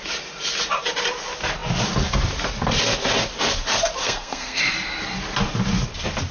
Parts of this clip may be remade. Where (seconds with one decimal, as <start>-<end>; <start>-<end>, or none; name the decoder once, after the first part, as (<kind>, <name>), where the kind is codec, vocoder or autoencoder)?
4.0-4.6 (codec, SNAC)